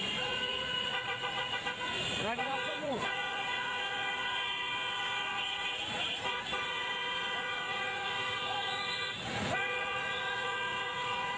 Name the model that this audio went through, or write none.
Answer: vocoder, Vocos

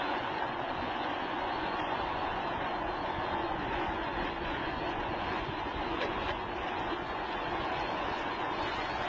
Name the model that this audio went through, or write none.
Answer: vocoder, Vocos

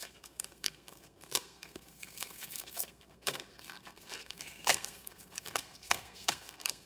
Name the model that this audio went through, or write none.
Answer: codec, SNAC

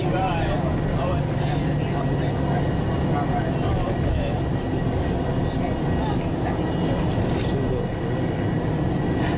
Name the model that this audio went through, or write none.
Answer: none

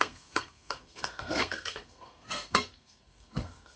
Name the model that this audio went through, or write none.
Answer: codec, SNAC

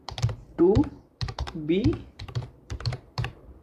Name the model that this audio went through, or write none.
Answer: vocoder, BigVGAN v2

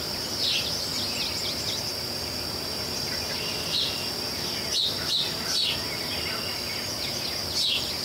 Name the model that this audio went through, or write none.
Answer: none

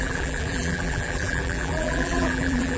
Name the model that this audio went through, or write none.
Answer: vocoder, BigVGAN v2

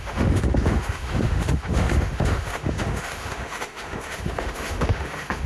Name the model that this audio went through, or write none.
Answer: autoencoder, DAC-VAE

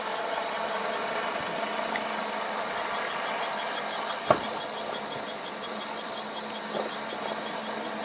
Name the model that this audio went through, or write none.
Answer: none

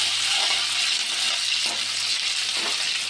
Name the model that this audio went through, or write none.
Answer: none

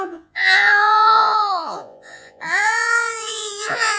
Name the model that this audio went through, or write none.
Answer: vocoder, Vocos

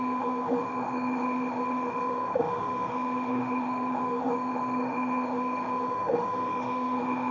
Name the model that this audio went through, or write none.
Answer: autoencoder, DAC-VAE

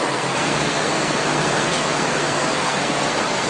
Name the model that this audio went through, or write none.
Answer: codec, SNAC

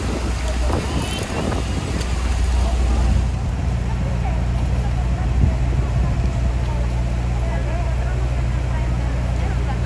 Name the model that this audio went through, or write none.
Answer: none